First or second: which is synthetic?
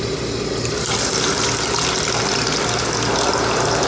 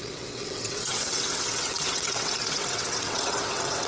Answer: second